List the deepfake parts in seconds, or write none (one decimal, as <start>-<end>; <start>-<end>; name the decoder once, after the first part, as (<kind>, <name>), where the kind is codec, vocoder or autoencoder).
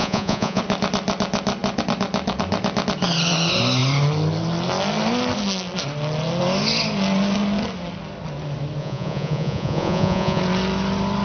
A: 0.0-0.6 (vocoder, Vocos); 8.8-10.4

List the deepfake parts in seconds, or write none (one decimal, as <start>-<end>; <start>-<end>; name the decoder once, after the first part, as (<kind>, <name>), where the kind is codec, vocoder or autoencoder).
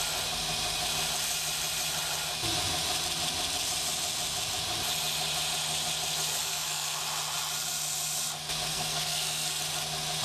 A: 6.4-7.0 (codec, SNAC); 8.7-9.6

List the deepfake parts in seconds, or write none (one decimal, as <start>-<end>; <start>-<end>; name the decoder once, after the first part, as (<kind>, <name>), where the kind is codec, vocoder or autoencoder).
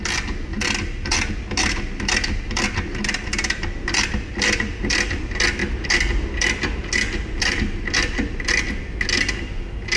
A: none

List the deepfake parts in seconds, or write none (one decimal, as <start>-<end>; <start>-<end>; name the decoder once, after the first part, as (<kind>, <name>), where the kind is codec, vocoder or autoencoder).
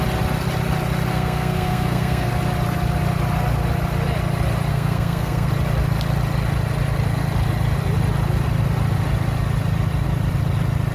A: 1.1-2.3 (codec, SNAC); 4.7-5.5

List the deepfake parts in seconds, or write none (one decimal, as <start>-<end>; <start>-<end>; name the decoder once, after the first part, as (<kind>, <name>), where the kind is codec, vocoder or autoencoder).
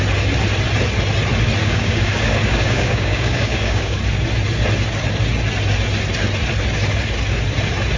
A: 1.6-4.0 (codec, DAC)